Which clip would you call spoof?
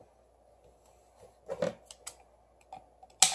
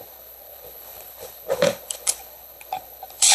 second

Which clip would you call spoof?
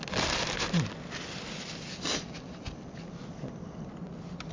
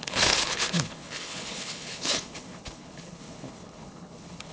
second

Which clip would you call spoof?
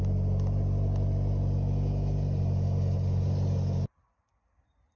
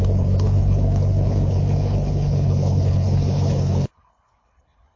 second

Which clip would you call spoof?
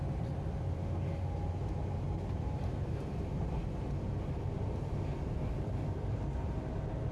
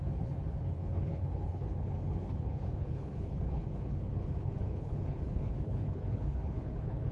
second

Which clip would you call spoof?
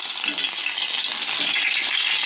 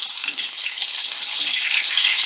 second